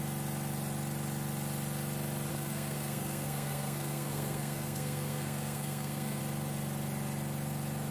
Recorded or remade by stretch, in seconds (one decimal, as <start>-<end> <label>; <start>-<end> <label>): 0.0-2.3 recorded; 2.3-6.2 remade; 6.2-7.9 recorded